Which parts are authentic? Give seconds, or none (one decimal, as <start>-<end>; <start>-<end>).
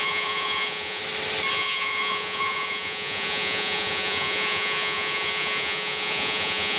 1.0-1.5